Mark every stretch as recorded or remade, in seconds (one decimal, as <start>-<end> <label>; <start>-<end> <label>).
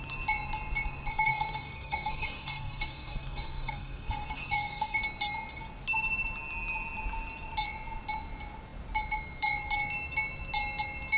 0.0-1.1 recorded; 1.1-5.0 remade; 5.0-11.2 recorded